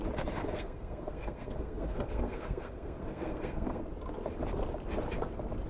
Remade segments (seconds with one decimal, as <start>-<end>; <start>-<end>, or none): 0.4-3.8